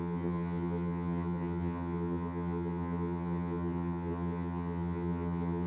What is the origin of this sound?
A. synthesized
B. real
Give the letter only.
A